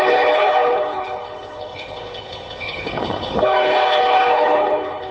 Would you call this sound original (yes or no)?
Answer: no